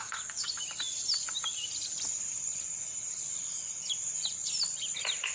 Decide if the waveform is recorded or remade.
recorded